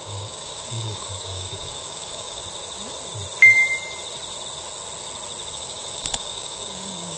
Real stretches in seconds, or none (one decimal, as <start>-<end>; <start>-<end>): 2.4-5.5